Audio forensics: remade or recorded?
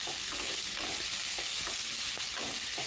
recorded